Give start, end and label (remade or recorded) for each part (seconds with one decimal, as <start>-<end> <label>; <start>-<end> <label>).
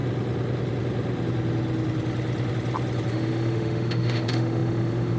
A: 0.0-3.1 recorded; 3.1-5.2 remade